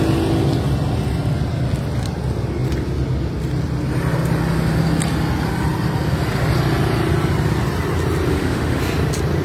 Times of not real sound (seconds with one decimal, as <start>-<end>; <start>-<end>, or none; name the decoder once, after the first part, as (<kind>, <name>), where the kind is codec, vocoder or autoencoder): 8.3-8.8 (autoencoder, DAC-VAE)